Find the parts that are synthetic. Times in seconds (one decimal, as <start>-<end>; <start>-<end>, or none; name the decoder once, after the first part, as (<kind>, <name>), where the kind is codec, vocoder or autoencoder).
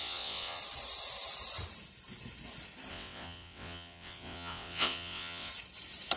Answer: 0.0-0.6 (vocoder, WaveNeXt); 2.9-5.5